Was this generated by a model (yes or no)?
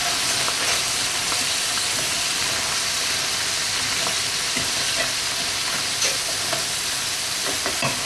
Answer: no